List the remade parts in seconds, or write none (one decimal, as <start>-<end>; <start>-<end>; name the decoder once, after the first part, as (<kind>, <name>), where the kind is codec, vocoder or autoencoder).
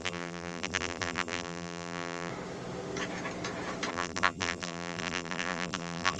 0.0-2.3 (vocoder, BigVGAN v2); 3.9-6.2